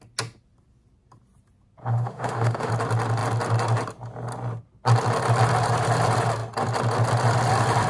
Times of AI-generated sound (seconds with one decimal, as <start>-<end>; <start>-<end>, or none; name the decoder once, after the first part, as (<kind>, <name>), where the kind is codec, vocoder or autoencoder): 1.8-2.7 (autoencoder, DAC-VAE)